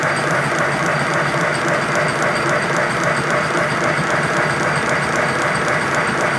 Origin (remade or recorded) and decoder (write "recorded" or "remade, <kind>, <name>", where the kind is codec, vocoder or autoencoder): recorded